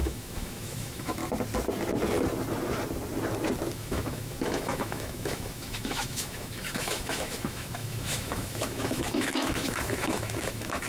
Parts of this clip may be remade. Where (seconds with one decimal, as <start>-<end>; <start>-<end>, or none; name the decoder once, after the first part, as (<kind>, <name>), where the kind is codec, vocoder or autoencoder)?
0.0-1.2 (autoencoder, DAC-VAE); 3.7-10.9